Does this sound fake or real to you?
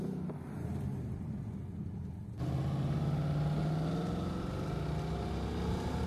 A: real